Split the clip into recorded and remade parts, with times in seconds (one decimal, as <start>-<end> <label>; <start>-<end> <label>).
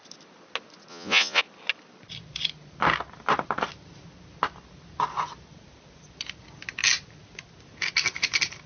0.0-0.9 recorded; 0.9-1.4 remade; 1.4-8.7 recorded